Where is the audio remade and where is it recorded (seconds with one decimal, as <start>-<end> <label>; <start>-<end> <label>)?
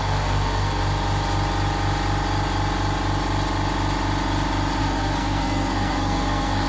0.0-0.8 remade; 0.8-4.8 recorded; 4.8-6.7 remade